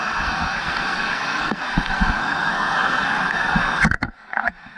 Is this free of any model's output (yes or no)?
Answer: no